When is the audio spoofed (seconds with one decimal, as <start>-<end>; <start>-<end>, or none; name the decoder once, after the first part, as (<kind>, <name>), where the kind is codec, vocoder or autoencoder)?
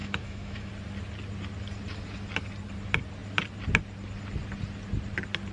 0.0-0.7 (autoencoder, DAC-VAE)